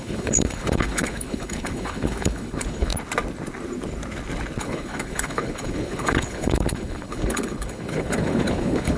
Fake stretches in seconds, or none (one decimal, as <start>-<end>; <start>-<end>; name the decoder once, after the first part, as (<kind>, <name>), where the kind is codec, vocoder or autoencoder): 0.0-2.9 (codec, HILCodec); 4.6-9.0